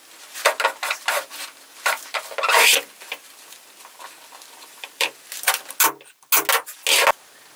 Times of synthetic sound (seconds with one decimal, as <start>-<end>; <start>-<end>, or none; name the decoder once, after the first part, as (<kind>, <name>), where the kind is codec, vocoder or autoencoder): 2.7-5.1 (vocoder, BigVGAN v2)